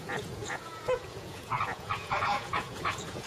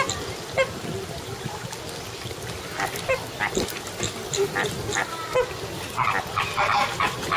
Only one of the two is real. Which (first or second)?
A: second